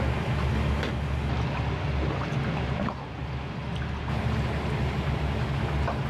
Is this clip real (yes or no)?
yes